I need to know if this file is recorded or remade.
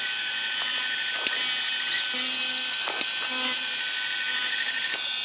recorded